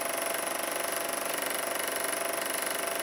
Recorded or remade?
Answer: recorded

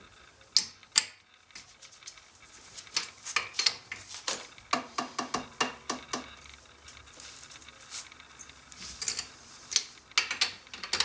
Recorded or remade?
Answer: recorded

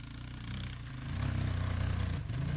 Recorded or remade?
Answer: recorded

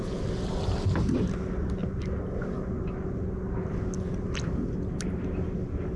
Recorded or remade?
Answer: recorded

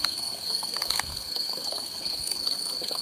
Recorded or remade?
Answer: remade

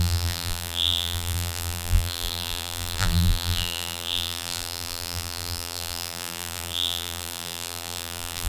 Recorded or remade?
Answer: remade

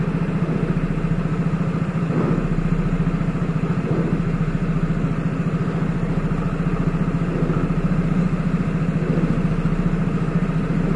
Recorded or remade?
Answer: recorded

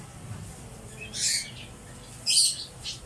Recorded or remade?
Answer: recorded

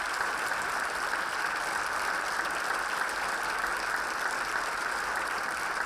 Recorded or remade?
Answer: recorded